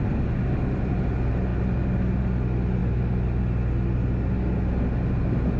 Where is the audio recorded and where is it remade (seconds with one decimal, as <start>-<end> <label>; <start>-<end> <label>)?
0.0-5.6 recorded